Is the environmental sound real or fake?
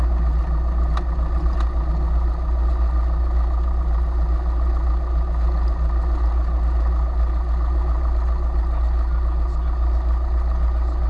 real